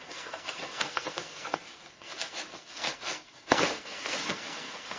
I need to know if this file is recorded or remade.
remade